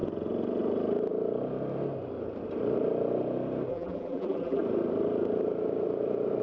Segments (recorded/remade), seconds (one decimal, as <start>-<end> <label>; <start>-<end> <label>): 0.0-3.7 recorded; 3.7-4.6 remade; 4.6-6.4 recorded